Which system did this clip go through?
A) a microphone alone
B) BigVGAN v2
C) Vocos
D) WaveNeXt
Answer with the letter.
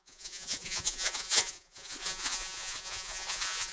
C